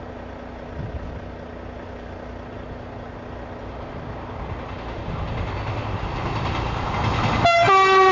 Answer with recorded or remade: recorded